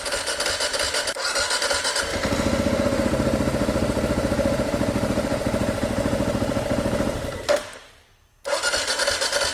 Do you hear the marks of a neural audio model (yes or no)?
no